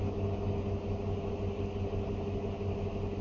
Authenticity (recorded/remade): recorded